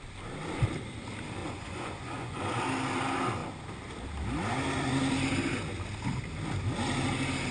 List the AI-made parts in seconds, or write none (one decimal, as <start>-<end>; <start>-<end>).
1.4-2.4

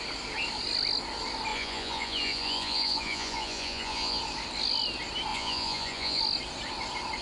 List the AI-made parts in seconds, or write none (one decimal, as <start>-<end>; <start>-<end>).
1.5-4.2; 5.3-6.2

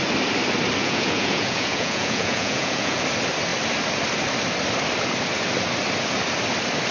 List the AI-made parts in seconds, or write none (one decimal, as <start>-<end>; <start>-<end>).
0.8-3.0

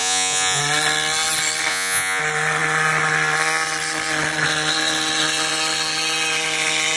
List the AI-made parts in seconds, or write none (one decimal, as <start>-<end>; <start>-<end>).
0.0-0.6; 1.7-2.2